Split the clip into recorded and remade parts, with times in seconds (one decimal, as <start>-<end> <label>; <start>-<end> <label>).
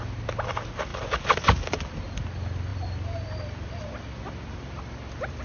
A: 0.0-2.7 recorded; 2.7-4.2 remade; 4.2-5.4 recorded